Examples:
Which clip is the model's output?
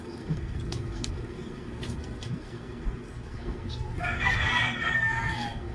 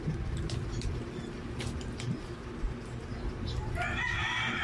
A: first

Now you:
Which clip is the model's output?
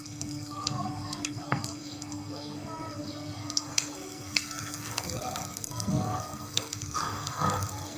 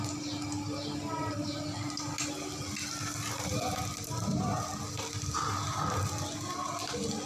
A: first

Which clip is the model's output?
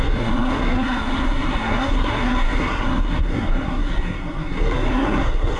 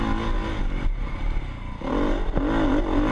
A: first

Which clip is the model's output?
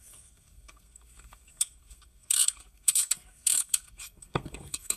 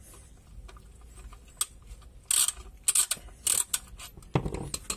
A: first